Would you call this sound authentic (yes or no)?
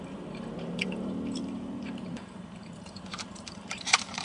no